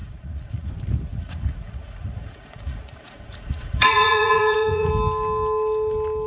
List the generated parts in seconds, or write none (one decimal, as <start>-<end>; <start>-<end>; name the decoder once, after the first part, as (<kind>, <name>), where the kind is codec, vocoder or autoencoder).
0.0-0.7 (vocoder, Vocos); 1.1-4.9